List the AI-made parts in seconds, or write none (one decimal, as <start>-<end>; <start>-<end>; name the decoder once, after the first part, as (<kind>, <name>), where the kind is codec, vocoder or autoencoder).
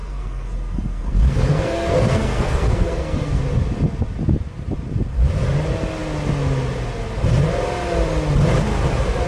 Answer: 0.0-3.4 (codec, SNAC)